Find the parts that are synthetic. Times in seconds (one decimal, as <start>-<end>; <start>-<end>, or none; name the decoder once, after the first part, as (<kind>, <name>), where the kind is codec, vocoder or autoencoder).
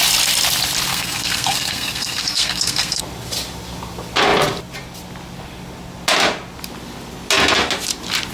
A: 0.9-3.0 (codec, SNAC)